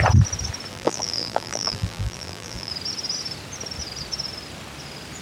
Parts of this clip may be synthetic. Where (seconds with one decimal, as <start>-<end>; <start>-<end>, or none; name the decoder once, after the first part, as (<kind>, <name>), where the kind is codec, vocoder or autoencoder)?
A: 0.7-2.7 (vocoder, BigVGAN v2)